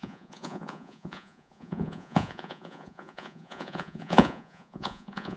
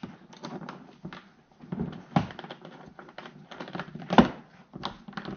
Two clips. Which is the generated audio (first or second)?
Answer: first